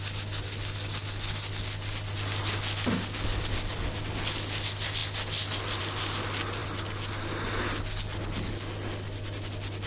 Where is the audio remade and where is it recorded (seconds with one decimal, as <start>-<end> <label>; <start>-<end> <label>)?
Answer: 0.0-9.9 recorded